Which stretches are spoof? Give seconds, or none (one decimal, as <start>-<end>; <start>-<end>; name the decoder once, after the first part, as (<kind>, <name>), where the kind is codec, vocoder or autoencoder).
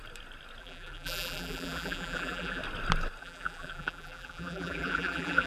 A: 0.6-2.6 (vocoder, BigVGAN v2); 3.2-5.5